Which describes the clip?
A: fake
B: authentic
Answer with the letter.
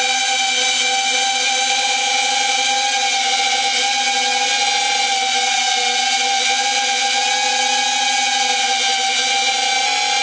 B